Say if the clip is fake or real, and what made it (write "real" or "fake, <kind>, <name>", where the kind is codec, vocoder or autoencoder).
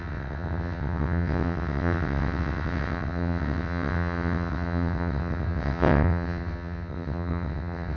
fake, vocoder, WaveNeXt